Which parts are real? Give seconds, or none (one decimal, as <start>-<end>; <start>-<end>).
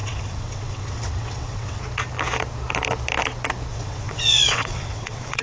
1.8-3.7